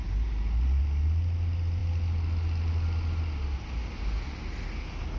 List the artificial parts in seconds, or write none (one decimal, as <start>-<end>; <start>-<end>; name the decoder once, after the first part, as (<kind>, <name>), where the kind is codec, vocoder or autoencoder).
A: none

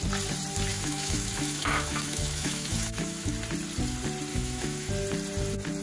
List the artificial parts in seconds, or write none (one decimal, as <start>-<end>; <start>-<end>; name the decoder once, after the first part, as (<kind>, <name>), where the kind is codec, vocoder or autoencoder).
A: 0.7-3.3 (autoencoder, DAC-VAE); 4.3-4.9

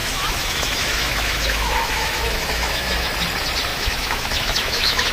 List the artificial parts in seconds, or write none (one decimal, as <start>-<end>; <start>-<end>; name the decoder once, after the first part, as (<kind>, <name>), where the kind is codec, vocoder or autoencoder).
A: 0.0-3.1 (autoencoder, DAC-VAE); 3.7-5.1

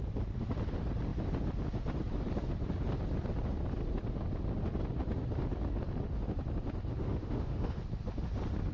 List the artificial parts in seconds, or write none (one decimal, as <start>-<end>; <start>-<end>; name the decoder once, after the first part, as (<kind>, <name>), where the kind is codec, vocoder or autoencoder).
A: 7.0-7.8 (autoencoder, DAC-VAE)

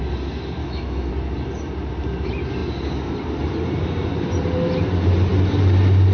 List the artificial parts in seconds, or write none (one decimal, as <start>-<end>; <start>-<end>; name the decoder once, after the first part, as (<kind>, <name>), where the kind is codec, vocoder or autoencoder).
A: 0.6-1.1 (autoencoder, DAC-VAE)

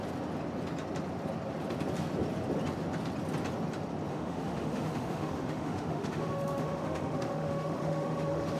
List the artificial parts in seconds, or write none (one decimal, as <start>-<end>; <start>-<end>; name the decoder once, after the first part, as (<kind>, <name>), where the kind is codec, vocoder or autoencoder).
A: 4.1-8.6 (autoencoder, DAC-VAE)

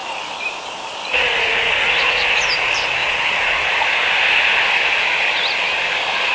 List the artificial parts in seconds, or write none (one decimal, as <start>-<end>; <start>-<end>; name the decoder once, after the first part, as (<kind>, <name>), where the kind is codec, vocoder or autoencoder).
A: none

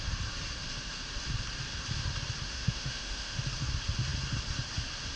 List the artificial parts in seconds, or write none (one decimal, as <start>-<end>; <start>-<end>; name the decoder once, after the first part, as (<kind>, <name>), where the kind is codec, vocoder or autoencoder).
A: 2.4-3.4 (autoencoder, DAC-VAE)